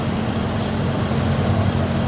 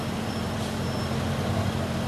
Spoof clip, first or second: first